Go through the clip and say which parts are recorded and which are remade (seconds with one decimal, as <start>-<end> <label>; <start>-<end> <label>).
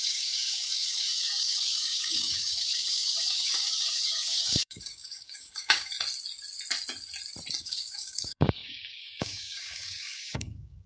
0.0-5.9 remade; 5.9-7.6 recorded; 7.6-10.9 remade